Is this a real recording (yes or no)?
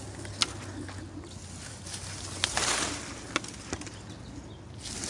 yes